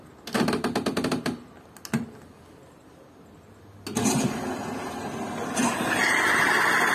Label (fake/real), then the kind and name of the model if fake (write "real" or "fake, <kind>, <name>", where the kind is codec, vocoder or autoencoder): real